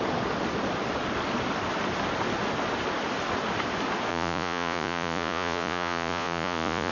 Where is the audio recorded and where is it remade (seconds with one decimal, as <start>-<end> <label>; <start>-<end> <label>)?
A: 0.0-4.1 recorded; 4.1-6.9 remade